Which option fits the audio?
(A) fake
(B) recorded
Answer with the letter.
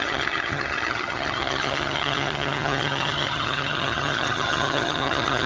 A